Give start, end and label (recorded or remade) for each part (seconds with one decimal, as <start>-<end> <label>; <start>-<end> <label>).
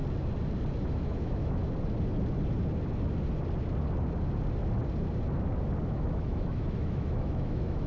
0.0-0.8 recorded; 0.8-1.6 remade; 1.6-5.9 recorded; 5.9-7.9 remade